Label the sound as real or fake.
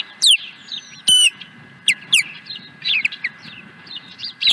fake